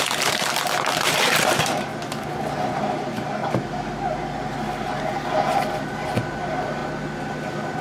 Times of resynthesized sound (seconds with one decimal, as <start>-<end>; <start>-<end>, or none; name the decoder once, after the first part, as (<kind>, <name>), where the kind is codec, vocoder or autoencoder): 0.0-1.9 (vocoder, BigVGAN v2); 2.8-3.4; 5.8-6.8